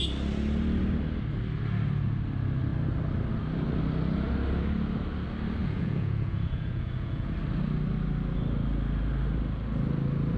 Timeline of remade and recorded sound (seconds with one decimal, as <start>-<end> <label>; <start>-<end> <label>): 0.0-5.6 recorded; 5.6-7.3 remade; 7.3-10.4 recorded